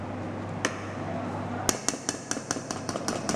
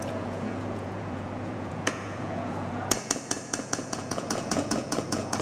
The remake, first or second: second